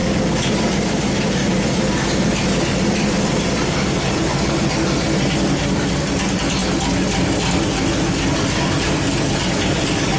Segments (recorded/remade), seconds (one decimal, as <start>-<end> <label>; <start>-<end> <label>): 0.0-4.7 remade; 4.7-10.2 recorded